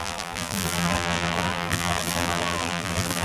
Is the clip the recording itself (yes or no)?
no